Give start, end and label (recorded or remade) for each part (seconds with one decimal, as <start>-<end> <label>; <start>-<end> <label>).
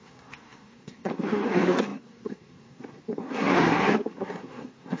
0.0-5.0 remade